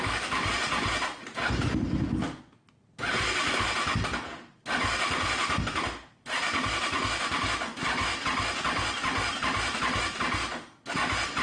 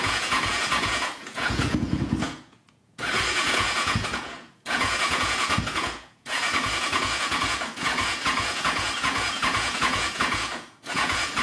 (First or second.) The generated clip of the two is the second